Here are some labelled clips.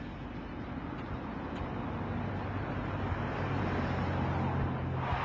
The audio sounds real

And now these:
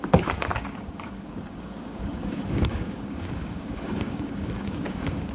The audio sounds fake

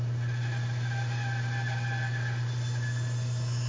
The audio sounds real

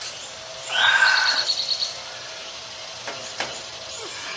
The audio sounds real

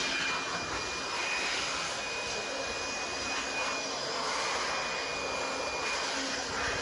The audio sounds real